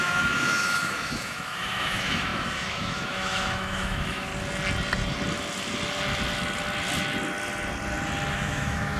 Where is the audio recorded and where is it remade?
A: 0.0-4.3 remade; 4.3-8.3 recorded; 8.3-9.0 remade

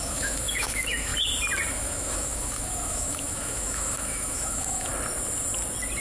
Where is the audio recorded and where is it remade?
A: 0.0-1.1 remade; 1.1-1.7 recorded; 1.7-4.9 remade; 4.9-6.0 recorded

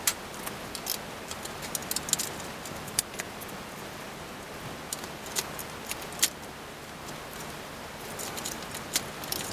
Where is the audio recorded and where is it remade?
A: 0.0-9.5 recorded

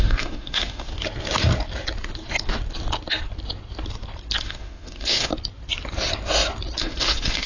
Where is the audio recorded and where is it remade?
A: 0.0-0.9 remade; 0.9-4.4 recorded; 4.4-5.3 remade; 5.3-6.8 recorded; 6.8-7.5 remade

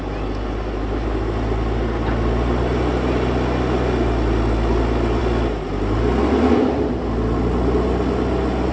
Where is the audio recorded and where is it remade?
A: 0.0-8.7 recorded

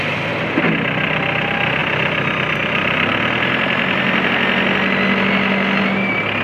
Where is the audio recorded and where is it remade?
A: 0.0-6.4 recorded

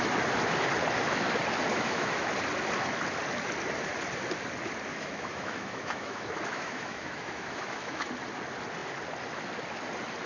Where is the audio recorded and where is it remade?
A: 0.0-1.7 recorded; 1.7-2.3 remade; 2.3-4.9 recorded; 4.9-8.1 remade; 8.1-10.3 recorded